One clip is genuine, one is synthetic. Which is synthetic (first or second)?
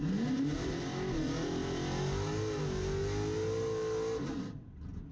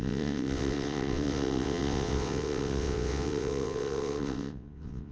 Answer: second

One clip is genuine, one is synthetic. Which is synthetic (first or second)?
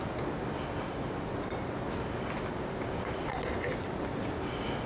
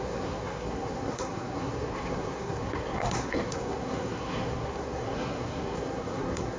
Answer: second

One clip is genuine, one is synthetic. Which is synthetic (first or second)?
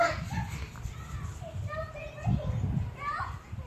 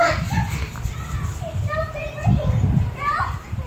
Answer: second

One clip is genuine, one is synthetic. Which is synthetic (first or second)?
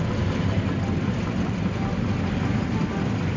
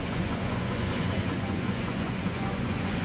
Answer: second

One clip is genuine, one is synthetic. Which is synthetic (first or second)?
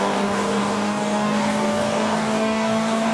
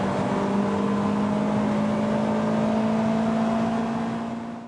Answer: first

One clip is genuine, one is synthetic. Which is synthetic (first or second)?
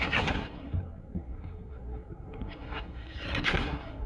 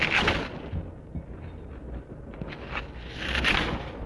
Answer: first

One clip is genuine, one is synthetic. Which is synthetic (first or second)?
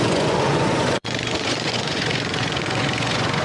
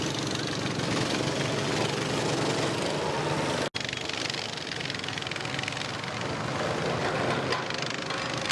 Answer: first